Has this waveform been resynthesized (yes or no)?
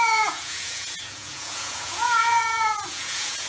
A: yes